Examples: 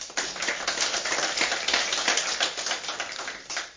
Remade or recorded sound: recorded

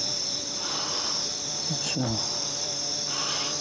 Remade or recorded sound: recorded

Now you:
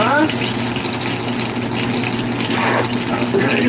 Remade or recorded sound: recorded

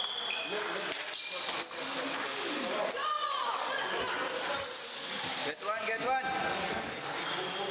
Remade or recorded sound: recorded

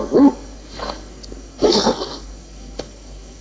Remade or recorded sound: remade